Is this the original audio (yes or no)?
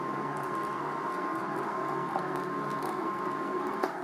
no